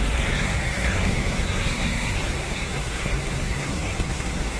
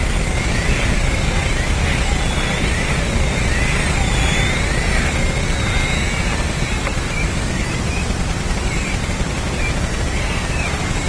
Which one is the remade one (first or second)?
first